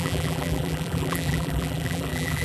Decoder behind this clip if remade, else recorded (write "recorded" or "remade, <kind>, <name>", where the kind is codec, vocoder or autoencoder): remade, vocoder, BigVGAN v2